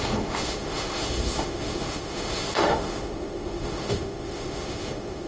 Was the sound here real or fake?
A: fake